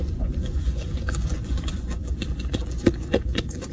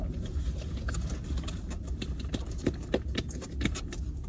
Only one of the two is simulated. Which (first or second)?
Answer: first